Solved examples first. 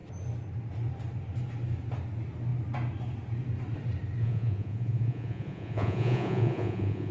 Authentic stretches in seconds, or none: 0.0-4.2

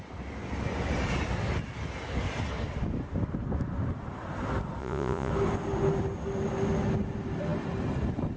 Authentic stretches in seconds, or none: 0.0-4.8; 5.3-8.4

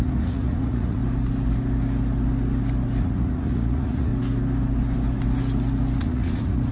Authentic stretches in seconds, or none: 1.0-3.0; 4.1-6.0

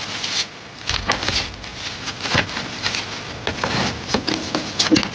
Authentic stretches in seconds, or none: 0.0-5.1

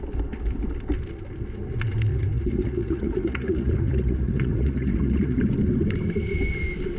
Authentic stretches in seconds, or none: 0.0-2.1; 5.4-7.0

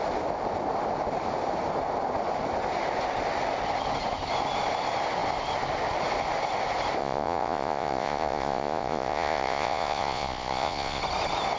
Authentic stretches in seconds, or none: 0.0-7.0; 11.0-11.6

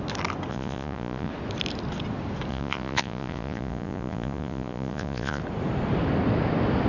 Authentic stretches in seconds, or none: 0.0-0.5; 1.3-2.5; 5.4-6.9